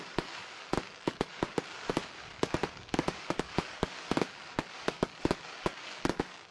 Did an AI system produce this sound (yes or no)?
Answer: yes